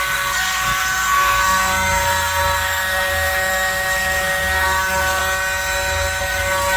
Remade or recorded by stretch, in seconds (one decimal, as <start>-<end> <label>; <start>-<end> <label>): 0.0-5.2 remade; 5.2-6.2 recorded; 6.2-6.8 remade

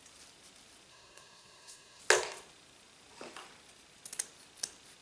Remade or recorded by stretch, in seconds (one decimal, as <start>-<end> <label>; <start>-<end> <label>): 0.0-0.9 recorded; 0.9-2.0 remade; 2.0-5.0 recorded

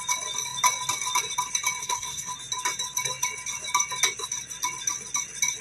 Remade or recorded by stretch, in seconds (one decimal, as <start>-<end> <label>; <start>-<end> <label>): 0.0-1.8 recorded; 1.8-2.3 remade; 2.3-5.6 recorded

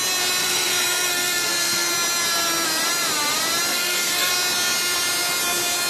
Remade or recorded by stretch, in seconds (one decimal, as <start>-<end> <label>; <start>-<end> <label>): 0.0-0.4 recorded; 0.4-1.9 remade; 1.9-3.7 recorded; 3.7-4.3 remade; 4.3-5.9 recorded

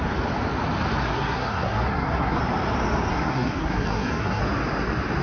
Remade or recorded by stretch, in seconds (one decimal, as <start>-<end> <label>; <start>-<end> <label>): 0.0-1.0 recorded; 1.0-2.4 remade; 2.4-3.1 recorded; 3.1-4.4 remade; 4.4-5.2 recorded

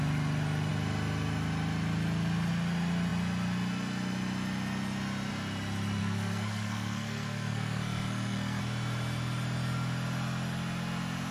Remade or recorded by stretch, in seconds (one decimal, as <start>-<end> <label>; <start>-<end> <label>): 0.0-6.0 recorded; 6.0-8.6 remade; 8.6-11.3 recorded

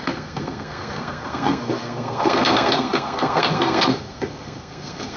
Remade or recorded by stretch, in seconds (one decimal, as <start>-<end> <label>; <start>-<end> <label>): 0.0-5.2 remade